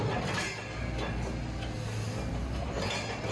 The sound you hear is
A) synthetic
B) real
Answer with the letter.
B